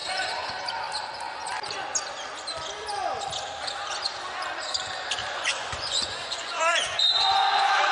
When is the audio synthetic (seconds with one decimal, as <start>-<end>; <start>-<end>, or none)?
0.0-0.5; 5.2-7.9